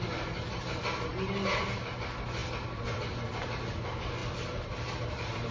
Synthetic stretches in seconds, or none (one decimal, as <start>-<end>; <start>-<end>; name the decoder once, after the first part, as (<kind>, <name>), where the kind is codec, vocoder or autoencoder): none